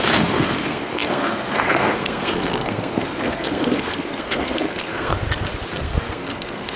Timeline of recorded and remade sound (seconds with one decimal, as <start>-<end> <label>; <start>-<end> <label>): 0.0-5.1 remade; 5.1-5.7 recorded; 5.7-6.8 remade